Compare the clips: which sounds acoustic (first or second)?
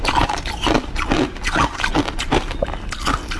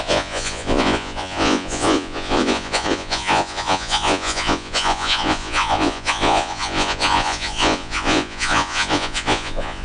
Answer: first